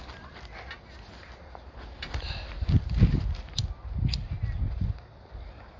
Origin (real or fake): real